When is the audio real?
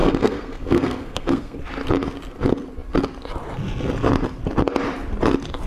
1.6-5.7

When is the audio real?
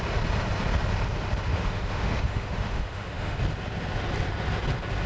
0.0-1.5; 3.4-5.1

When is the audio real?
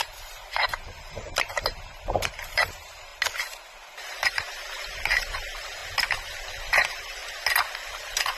3.1-4.1; 5.8-6.6; 7.2-7.9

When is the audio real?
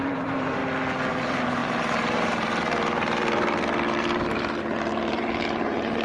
0.6-1.1